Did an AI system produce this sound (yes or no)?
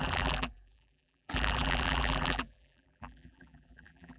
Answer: yes